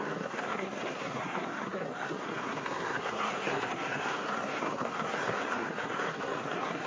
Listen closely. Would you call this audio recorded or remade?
remade